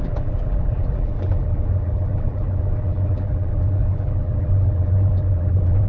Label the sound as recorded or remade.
remade